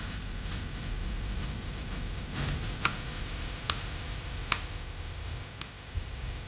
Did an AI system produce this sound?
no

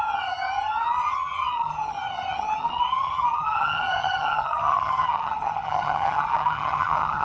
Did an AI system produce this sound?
yes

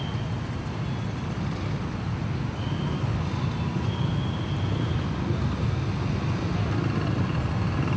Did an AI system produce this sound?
no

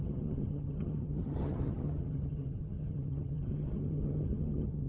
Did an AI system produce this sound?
yes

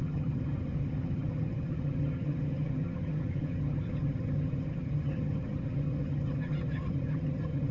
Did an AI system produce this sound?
yes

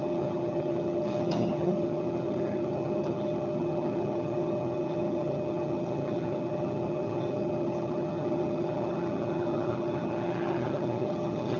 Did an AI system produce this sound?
yes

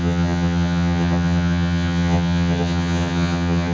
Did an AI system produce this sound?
yes